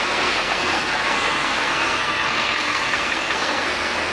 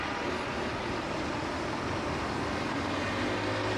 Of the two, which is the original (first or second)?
second